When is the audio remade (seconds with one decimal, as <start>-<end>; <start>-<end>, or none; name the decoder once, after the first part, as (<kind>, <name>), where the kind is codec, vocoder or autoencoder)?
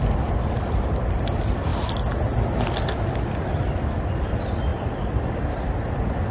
0.0-1.7 (vocoder, BigVGAN v2); 3.1-4.7